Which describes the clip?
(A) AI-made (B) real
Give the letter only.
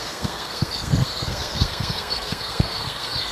A